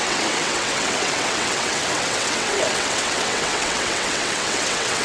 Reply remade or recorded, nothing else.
remade